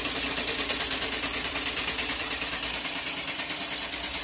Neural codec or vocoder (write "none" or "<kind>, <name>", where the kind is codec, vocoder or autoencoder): vocoder, BigVGAN v2